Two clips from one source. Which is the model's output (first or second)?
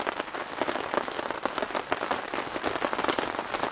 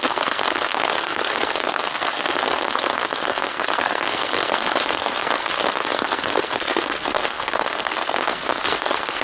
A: second